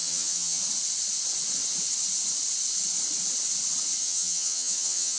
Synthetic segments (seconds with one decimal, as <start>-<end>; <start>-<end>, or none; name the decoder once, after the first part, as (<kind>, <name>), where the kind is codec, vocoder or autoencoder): 0.0-0.6 (vocoder, HiFi-GAN); 4.0-5.2